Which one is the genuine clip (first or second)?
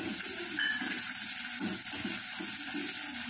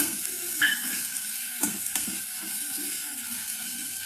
first